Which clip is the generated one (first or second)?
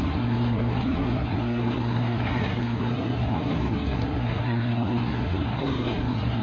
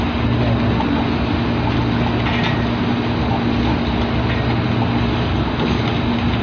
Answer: first